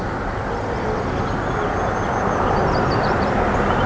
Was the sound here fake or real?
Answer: real